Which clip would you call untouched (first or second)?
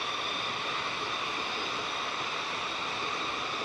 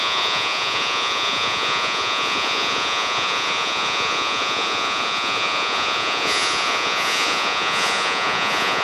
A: first